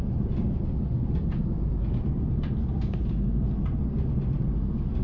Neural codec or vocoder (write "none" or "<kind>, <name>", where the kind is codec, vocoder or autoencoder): none